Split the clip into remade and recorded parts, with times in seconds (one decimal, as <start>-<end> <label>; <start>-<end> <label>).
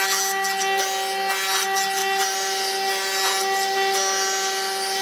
0.0-5.0 recorded